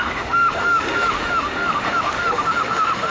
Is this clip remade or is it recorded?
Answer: remade